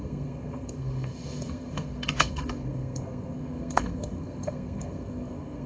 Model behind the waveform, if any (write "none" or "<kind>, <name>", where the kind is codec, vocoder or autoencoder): codec, SNAC